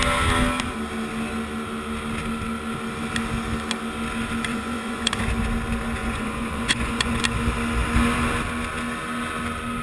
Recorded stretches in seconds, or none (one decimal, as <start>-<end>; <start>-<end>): 0.0-4.5; 5.2-6.0; 7.2-9.8